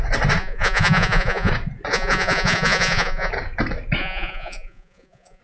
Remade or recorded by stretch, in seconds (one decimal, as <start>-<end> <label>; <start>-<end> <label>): 0.0-0.4 recorded; 0.4-1.5 remade; 1.5-1.9 recorded; 1.9-3.3 remade; 3.3-4.0 recorded; 4.0-5.4 remade